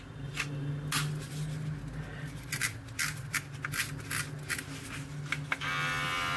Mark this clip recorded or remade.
recorded